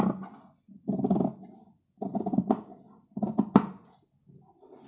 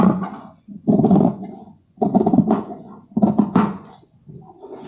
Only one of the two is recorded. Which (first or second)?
first